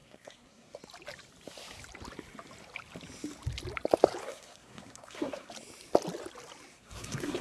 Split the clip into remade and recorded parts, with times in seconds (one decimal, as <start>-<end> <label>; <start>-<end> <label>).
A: 0.0-0.8 remade; 0.8-4.2 recorded; 4.2-5.5 remade; 5.5-6.7 recorded; 6.7-7.4 remade